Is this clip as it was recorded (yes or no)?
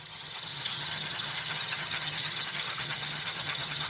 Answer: no